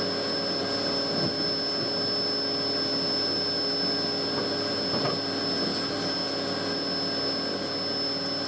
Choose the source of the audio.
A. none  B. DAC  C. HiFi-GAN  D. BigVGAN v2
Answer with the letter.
A